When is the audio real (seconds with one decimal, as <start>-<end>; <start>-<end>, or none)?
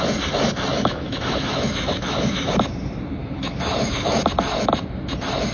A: 0.0-0.7; 2.5-3.2; 4.2-5.5